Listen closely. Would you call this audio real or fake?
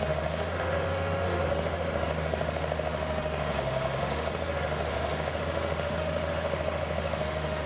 fake